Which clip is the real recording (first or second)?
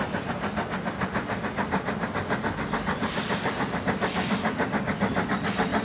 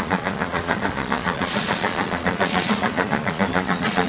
first